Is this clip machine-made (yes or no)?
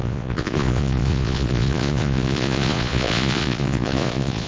yes